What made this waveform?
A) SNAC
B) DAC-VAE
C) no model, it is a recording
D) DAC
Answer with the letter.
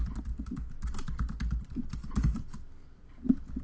C